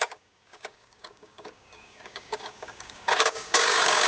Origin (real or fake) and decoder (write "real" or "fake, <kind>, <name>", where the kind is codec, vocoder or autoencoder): fake, codec, DAC